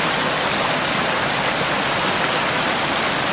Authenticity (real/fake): real